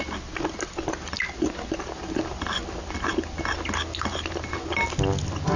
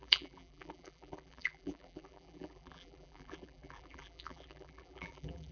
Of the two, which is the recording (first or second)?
first